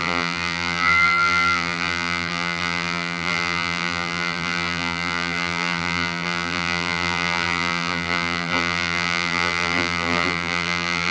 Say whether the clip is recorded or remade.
remade